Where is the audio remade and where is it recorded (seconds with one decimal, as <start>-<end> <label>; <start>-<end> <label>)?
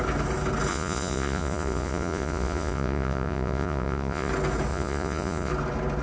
0.0-0.7 recorded; 0.7-4.3 remade; 4.3-4.7 recorded; 4.7-5.5 remade; 5.5-6.0 recorded